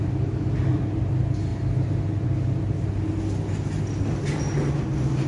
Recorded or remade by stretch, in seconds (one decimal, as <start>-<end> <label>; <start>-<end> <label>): 0.0-5.3 recorded